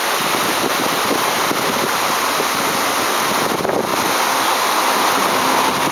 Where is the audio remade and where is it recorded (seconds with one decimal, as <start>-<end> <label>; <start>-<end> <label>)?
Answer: 0.0-5.9 recorded